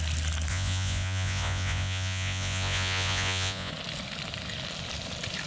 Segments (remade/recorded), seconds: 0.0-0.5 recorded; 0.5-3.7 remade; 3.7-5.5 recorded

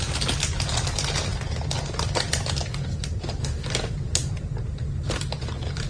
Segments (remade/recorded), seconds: 0.0-5.9 recorded

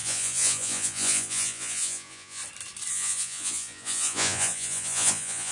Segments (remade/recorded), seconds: 0.0-2.4 remade; 2.4-2.9 recorded; 2.9-5.5 remade

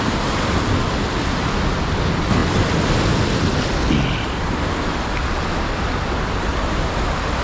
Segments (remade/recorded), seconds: 0.0-7.4 recorded